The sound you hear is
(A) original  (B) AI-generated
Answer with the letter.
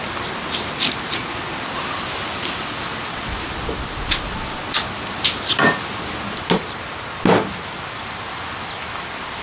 A